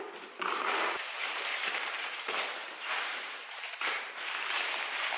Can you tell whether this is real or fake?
fake